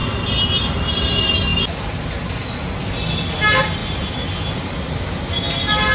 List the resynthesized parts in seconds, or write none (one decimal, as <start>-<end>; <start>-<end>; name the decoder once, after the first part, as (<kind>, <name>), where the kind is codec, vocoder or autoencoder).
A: 0.0-0.7 (vocoder, BigVGAN v2); 3.8-5.4